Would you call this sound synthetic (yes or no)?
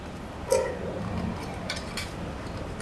no